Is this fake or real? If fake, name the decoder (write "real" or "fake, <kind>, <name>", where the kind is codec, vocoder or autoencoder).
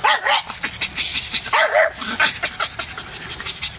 real